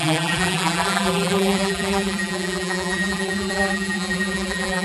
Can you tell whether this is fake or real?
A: fake